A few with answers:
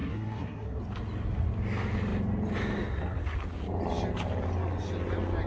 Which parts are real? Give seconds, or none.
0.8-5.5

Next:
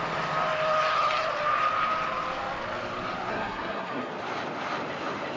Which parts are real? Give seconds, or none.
0.0-3.3; 4.1-5.4

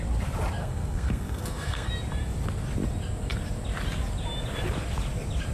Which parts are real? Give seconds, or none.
0.0-0.6; 1.9-5.5

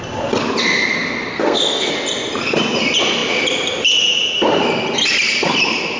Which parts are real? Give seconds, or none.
0.0-1.3; 1.9-6.0

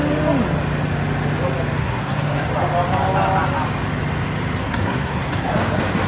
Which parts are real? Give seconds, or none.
0.0-1.8; 2.5-4.6; 5.5-6.1

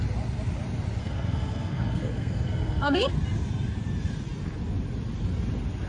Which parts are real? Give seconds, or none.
0.0-1.0; 3.1-5.9